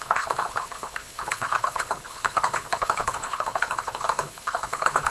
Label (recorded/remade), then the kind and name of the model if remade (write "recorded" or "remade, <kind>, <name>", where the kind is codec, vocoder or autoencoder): remade, codec, HILCodec